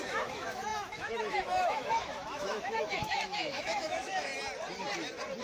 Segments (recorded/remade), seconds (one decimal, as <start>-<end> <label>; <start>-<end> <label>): 0.0-4.3 remade; 4.3-5.4 recorded